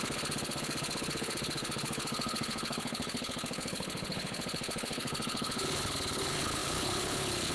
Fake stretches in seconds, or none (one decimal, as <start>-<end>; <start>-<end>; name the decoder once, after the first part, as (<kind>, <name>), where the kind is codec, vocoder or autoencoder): 0.0-7.5 (codec, HILCodec)